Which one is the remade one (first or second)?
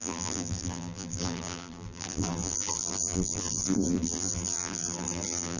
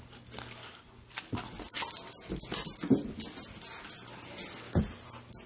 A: first